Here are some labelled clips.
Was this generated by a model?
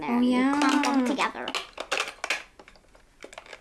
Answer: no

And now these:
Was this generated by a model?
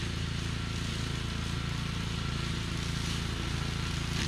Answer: no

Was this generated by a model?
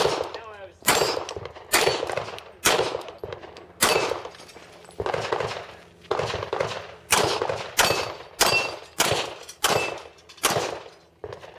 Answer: no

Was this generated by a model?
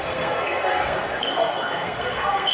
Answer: yes